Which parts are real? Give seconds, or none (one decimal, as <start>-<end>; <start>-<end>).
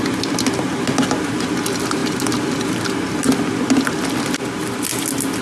0.0-5.4